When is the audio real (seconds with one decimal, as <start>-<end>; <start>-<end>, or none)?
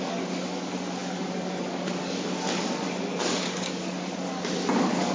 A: none